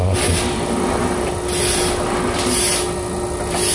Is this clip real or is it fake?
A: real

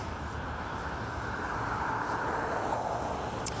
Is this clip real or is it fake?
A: fake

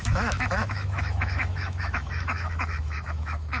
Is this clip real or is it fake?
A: fake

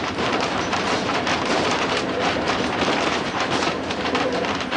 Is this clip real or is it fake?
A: fake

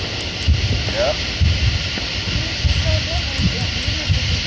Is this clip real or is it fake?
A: fake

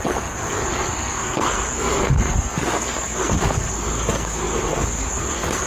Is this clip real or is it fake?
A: fake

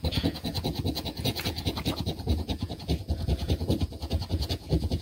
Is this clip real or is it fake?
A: fake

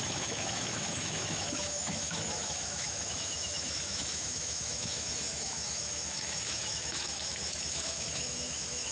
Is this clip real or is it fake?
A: fake